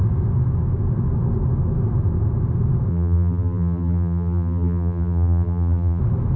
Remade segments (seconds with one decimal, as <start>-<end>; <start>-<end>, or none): 2.9-6.0